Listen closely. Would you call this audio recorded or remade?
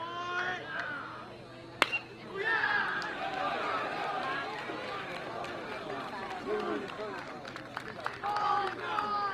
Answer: recorded